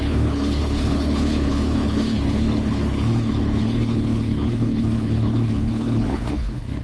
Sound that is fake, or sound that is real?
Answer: fake